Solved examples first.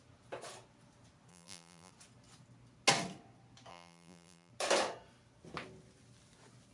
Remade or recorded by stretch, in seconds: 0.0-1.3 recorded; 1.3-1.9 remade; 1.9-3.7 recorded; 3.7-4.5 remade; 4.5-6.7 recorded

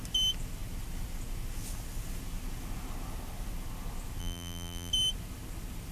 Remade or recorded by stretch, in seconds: 0.0-4.2 recorded; 4.2-4.9 remade; 4.9-5.9 recorded

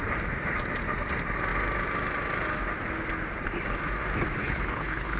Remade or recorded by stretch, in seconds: 0.0-4.4 recorded; 4.4-5.2 remade

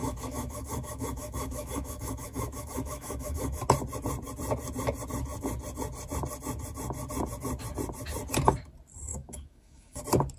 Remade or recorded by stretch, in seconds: 0.0-3.6 remade; 3.6-9.1 recorded; 9.1-10.0 remade; 10.0-10.4 recorded

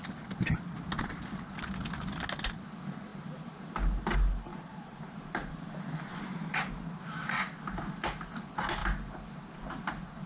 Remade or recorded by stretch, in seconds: 0.0-3.1 recorded; 3.1-3.7 remade; 3.7-4.5 recorded; 4.5-6.7 remade; 6.7-10.3 recorded

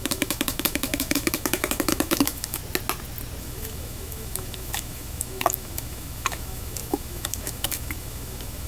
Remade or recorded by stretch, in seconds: 0.0-2.6 remade; 2.6-3.4 recorded; 3.4-8.7 remade

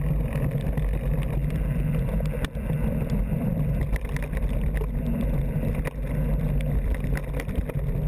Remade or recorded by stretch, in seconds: 0.0-1.4 recorded; 1.4-4.4 remade; 4.4-8.1 recorded